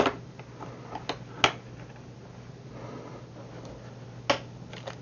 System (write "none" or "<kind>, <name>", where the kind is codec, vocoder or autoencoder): none